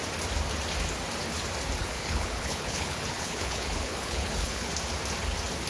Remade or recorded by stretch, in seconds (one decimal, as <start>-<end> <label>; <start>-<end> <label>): 0.0-1.8 recorded; 1.8-4.7 remade; 4.7-5.7 recorded